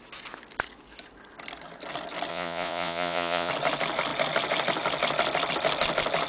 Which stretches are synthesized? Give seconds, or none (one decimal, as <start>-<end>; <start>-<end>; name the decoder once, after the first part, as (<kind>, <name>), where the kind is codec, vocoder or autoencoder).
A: 2.3-3.5 (vocoder, Vocos)